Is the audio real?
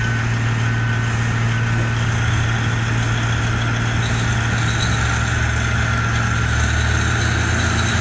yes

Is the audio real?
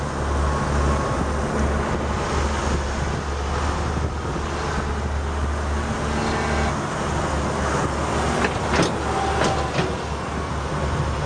yes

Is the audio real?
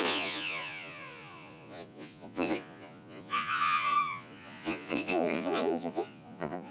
no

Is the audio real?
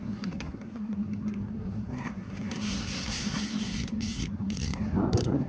no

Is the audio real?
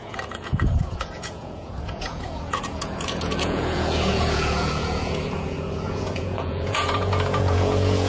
no